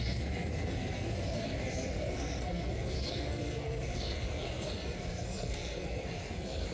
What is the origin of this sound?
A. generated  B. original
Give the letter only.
A